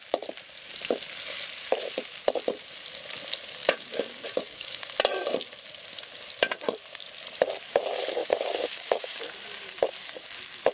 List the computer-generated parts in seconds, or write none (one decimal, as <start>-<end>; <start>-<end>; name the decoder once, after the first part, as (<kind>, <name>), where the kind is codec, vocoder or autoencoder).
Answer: 3.6-4.8 (codec, DAC); 8.2-9.2